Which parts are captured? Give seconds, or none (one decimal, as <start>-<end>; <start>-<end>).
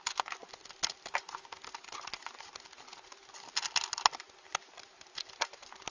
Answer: 0.0-5.9